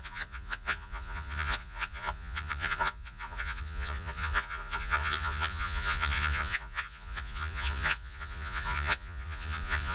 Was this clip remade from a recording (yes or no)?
yes